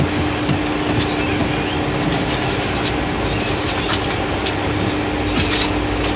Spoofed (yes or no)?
no